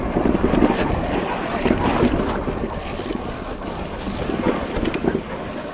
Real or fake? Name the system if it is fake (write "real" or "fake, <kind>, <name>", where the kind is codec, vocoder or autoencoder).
real